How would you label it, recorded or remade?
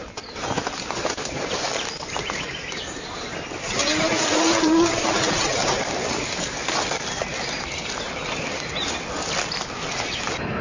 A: recorded